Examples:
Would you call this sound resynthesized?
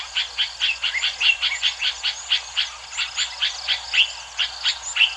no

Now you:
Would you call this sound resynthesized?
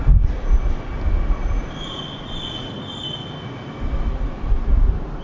no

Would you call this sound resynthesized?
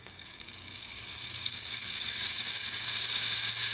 yes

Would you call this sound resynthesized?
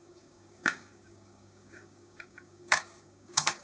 yes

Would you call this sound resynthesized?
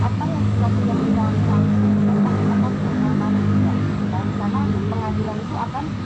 yes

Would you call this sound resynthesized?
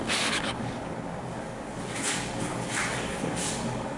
yes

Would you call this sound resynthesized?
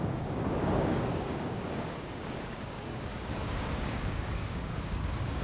yes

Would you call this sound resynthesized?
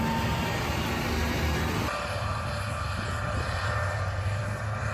no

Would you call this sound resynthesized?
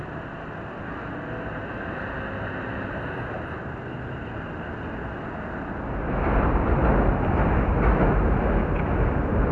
no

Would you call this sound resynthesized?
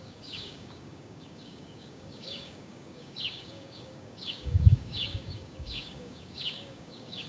yes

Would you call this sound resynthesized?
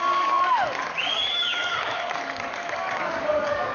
yes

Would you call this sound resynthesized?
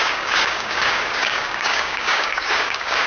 yes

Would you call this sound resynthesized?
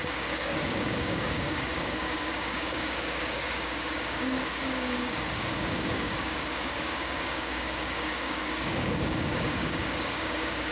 yes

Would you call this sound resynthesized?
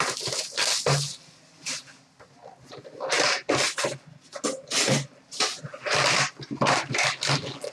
no